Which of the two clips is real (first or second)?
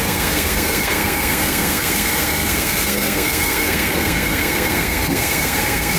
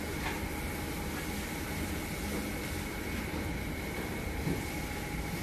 second